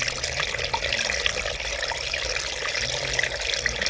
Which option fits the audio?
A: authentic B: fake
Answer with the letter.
A